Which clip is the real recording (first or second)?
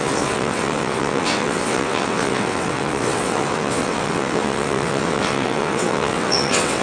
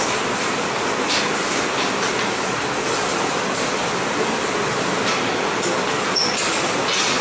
second